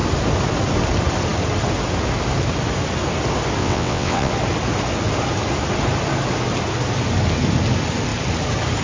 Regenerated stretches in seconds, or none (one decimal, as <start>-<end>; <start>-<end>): 3.6-4.3